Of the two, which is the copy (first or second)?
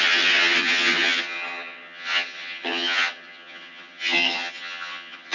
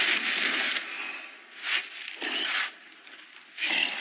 first